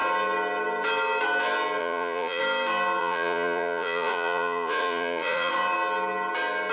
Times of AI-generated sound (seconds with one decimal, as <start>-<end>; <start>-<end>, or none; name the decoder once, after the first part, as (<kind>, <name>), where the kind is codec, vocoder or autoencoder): 1.8-2.4 (vocoder, Vocos); 3.0-5.5